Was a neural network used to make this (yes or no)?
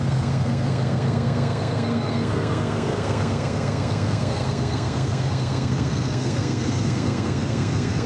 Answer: yes